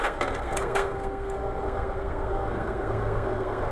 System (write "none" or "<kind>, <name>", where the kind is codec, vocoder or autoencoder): codec, SNAC